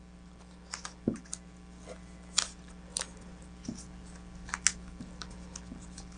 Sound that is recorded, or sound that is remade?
recorded